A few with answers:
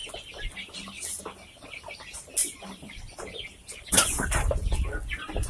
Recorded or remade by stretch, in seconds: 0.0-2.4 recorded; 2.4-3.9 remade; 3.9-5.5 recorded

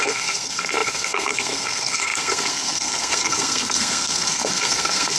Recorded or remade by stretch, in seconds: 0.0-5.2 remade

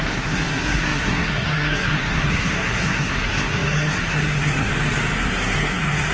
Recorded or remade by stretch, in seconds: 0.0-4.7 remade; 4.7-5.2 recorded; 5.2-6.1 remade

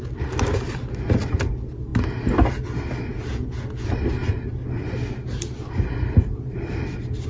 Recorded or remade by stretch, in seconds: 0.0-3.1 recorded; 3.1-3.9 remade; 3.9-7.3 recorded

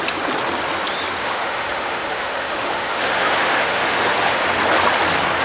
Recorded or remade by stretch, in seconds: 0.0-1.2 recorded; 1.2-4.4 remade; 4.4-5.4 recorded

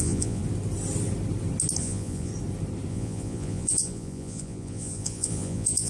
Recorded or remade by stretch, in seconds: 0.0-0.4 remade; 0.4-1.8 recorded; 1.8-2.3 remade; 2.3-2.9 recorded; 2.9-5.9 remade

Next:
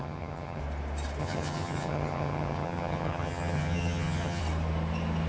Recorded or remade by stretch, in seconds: 0.0-0.6 remade; 0.6-1.2 recorded; 1.2-4.4 remade; 4.4-5.3 recorded